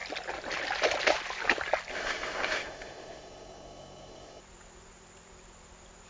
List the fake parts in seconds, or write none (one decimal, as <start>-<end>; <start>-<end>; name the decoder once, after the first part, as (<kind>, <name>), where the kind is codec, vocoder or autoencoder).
1.9-4.4 (codec, SNAC)